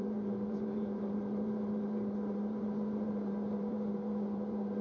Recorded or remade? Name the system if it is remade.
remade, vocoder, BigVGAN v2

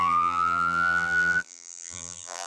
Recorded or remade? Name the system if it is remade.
remade, vocoder, BigVGAN v2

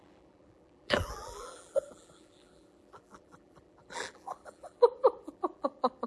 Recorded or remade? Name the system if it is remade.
remade, vocoder, BigVGAN v2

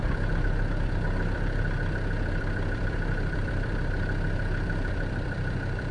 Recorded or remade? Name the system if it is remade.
remade, vocoder, BigVGAN v2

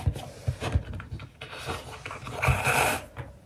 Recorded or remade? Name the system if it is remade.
recorded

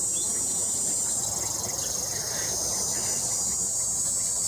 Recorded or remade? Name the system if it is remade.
recorded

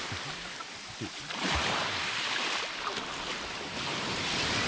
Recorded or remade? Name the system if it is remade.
remade, vocoder, BigVGAN v2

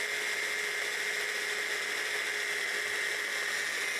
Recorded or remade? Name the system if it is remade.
recorded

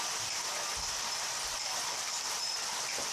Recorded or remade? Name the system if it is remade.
remade, vocoder, BigVGAN v2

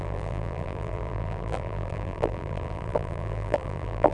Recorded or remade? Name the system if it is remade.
remade, vocoder, BigVGAN v2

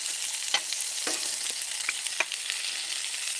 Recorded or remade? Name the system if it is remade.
recorded